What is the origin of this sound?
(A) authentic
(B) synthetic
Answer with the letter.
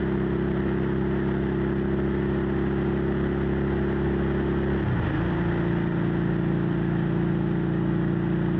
A